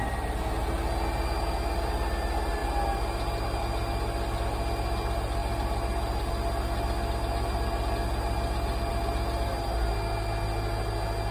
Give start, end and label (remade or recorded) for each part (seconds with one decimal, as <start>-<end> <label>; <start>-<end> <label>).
0.0-11.3 recorded